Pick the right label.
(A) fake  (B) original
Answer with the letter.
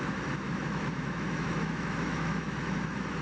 A